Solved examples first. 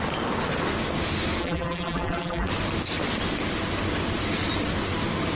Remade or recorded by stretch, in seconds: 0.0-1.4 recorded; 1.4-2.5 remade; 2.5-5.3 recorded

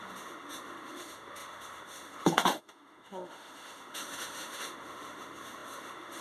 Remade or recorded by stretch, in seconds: 0.0-6.2 remade